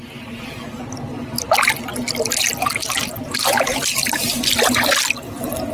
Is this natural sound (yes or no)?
yes